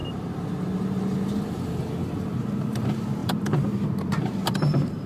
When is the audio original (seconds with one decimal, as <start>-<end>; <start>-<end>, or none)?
0.0-1.5